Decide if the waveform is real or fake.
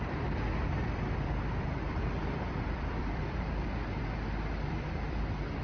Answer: fake